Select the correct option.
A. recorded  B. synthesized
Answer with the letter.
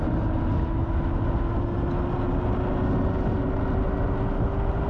A